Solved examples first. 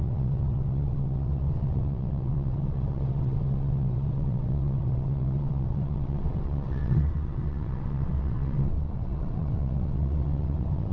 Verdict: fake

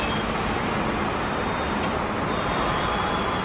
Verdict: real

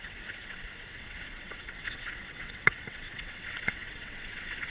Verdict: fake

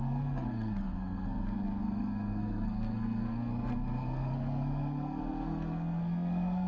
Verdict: fake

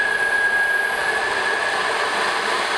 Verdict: real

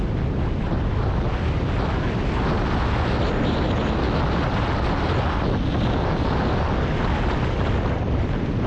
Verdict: real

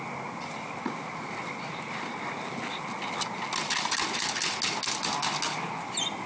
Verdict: real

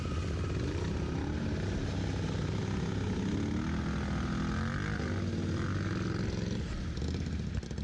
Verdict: real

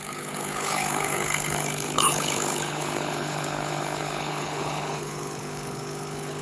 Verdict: fake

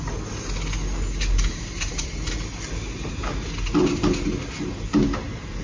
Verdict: real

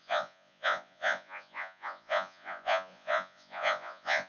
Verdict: fake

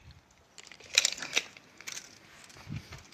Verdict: real